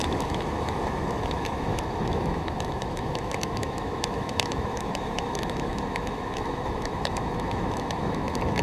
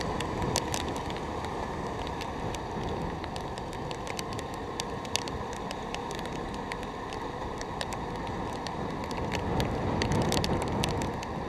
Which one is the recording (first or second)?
second